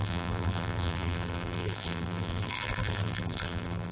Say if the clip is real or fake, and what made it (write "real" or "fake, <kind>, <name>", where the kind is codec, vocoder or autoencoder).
fake, vocoder, BigVGAN v2